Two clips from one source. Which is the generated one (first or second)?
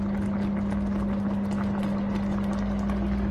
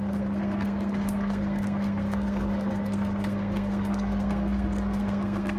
second